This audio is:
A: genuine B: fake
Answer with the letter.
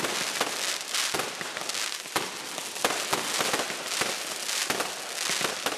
A